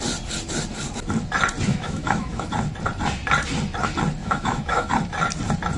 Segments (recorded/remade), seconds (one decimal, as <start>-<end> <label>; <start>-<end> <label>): 0.0-1.7 recorded; 1.7-2.5 remade; 2.5-4.2 recorded; 4.2-4.9 remade; 4.9-5.8 recorded